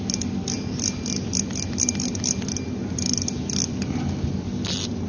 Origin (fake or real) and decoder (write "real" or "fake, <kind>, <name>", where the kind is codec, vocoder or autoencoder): real